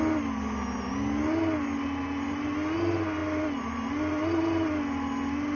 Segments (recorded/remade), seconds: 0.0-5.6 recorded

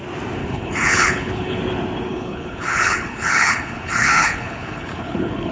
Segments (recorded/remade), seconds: 0.0-0.4 recorded; 0.4-1.6 remade; 1.6-2.1 recorded; 2.1-5.5 remade

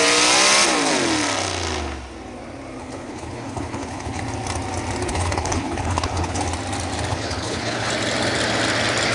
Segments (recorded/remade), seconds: 0.0-2.8 recorded; 2.8-4.2 remade; 4.2-5.1 recorded; 5.1-6.4 remade; 6.4-7.1 recorded; 7.1-7.9 remade; 7.9-9.1 recorded

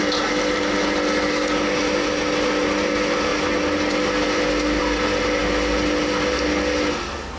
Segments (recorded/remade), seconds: 0.0-7.4 recorded

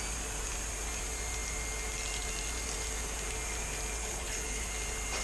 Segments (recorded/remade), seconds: 0.0-4.0 recorded; 4.0-4.7 remade; 4.7-5.2 recorded